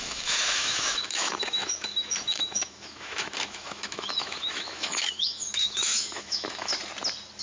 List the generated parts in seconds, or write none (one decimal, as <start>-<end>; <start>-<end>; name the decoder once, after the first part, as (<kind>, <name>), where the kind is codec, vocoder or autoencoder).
0.0-6.7 (autoencoder, DAC-VAE)